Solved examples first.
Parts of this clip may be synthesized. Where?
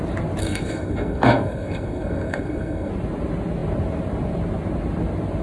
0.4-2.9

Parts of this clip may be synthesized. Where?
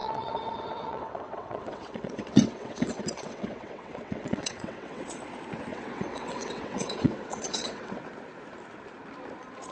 0.0-5.0; 5.7-8.0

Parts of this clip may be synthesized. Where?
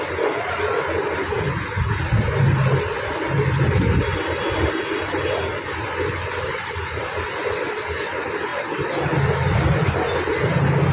none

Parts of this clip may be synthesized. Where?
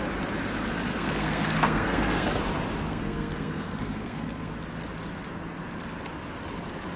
0.9-2.4; 2.9-4.5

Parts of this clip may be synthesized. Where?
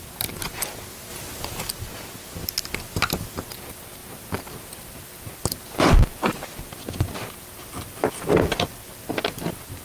none